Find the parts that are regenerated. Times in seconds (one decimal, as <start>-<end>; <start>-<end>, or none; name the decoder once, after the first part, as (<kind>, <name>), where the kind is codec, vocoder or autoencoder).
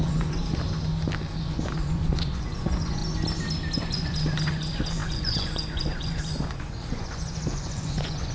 0.0-0.4 (vocoder, Vocos); 1.4-3.0; 3.8-8.3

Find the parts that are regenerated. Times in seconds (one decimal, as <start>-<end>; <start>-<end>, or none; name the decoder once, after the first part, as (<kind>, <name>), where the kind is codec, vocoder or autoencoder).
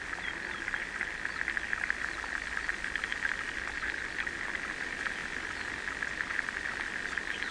none